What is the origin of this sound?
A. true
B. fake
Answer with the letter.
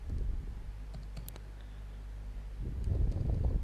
A